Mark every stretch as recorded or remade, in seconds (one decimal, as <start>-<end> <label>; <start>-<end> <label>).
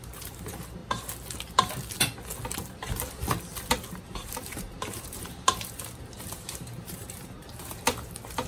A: 0.0-0.8 remade; 0.8-3.9 recorded; 3.9-8.5 remade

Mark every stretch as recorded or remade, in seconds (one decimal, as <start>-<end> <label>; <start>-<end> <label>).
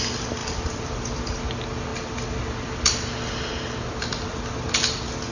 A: 0.0-0.4 recorded; 0.4-1.4 remade; 1.4-5.3 recorded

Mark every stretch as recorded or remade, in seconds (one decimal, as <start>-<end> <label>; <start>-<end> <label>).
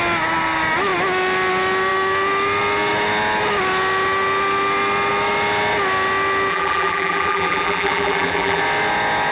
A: 0.0-6.5 recorded; 6.5-8.6 remade; 8.6-9.3 recorded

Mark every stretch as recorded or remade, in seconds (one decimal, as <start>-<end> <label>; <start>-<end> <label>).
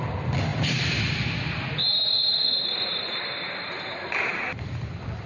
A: 0.0-0.5 recorded; 0.5-1.2 remade; 1.2-2.4 recorded; 2.4-5.3 remade